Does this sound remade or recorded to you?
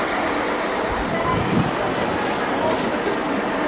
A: recorded